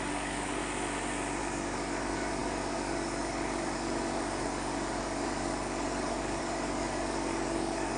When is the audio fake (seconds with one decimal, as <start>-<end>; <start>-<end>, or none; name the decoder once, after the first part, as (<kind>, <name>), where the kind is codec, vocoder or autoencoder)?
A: 0.0-0.6 (codec, DAC); 1.4-8.0